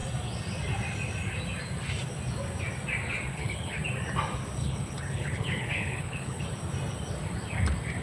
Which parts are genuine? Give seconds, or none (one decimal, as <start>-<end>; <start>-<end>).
0.0-3.3; 3.8-4.6; 6.4-8.0